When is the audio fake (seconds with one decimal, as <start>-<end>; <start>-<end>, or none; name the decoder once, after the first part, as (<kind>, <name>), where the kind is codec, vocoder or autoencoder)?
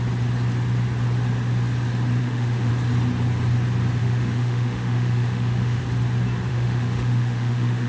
2.2-2.7 (autoencoder, DAC-VAE); 4.0-5.8; 6.5-7.9